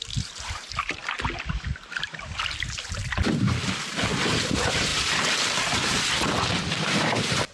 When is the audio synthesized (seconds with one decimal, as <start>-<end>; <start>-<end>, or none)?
0.0-1.0; 1.9-3.0; 4.3-4.9; 6.7-7.5